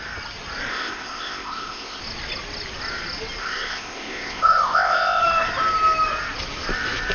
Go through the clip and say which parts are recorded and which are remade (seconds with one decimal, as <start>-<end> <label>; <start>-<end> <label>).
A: 0.0-0.7 recorded; 0.7-2.0 remade; 2.0-3.4 recorded; 3.4-5.2 remade; 5.2-7.1 recorded